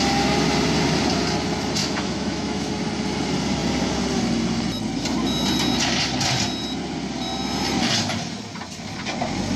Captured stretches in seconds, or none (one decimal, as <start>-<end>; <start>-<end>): 0.0-1.8; 2.7-9.6